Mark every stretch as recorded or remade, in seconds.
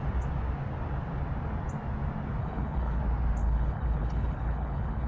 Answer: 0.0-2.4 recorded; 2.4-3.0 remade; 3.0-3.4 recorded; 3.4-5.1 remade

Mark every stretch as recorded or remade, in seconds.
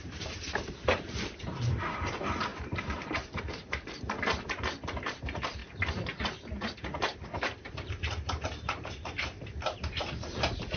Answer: 0.0-5.6 remade; 5.6-7.7 recorded; 7.7-10.8 remade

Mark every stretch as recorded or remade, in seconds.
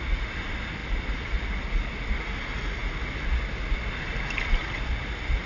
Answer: 0.0-5.5 recorded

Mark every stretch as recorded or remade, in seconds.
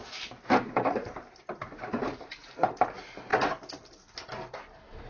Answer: 0.0-0.6 recorded; 0.6-3.3 remade; 3.3-5.1 recorded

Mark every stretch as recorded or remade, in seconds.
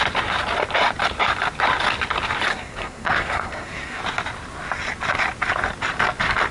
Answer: 0.0-2.5 recorded; 2.5-4.0 remade; 4.0-6.5 recorded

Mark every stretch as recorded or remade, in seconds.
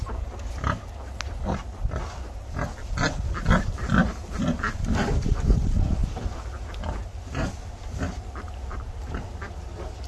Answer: 0.0-10.1 recorded